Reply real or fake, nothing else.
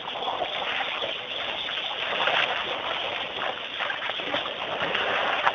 real